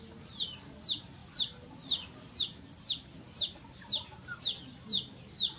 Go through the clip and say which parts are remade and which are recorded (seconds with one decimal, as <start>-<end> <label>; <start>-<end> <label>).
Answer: 0.0-5.6 recorded